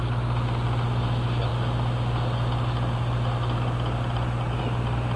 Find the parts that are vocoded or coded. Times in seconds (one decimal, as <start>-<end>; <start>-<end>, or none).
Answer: none